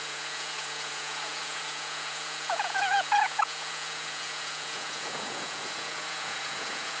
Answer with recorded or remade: remade